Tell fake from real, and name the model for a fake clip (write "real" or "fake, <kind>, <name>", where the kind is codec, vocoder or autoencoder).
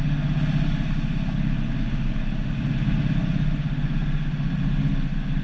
real